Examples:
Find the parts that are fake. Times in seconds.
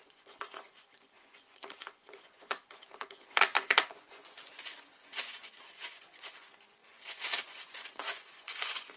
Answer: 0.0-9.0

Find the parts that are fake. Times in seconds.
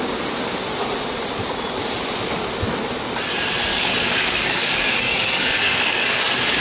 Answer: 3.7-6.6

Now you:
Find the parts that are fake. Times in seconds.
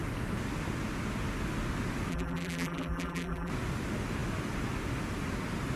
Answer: 2.1-3.5